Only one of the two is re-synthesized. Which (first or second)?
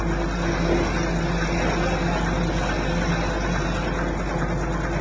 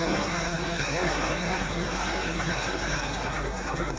second